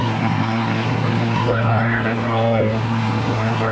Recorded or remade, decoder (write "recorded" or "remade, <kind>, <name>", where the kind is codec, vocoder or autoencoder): remade, codec, SNAC